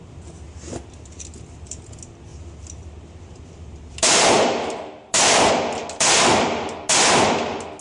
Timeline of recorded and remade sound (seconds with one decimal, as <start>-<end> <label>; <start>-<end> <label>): 0.0-2.3 recorded; 2.3-5.5 remade; 5.5-7.8 recorded